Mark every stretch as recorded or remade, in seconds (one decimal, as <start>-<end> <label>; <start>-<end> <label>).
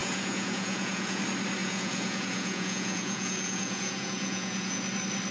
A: 0.0-1.2 remade; 1.2-1.6 recorded; 1.6-4.8 remade; 4.8-5.3 recorded